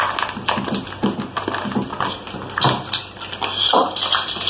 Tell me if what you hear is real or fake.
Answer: real